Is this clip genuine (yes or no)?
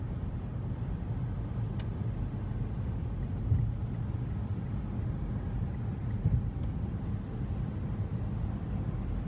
yes